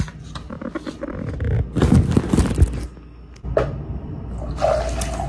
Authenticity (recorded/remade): recorded